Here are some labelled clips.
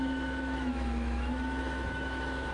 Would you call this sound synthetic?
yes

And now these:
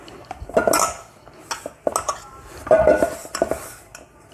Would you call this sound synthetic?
no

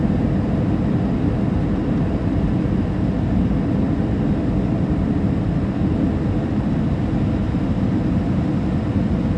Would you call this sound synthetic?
no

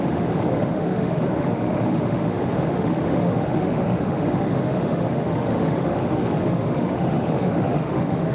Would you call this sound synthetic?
yes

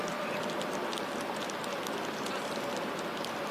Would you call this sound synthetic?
no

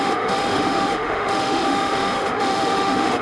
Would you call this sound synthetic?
yes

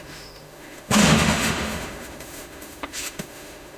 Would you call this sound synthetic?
yes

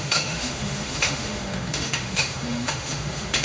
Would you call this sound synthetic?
yes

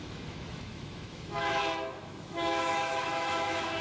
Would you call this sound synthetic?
yes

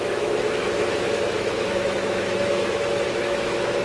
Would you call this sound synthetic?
yes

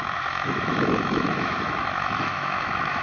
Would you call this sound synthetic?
yes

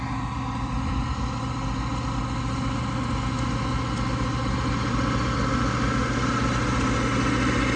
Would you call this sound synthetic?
no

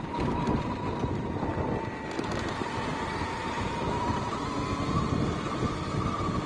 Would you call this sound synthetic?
no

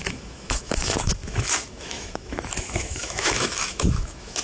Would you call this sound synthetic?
yes